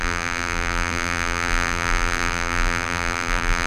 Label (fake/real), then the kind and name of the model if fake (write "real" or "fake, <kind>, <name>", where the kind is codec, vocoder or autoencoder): fake, vocoder, BigVGAN v2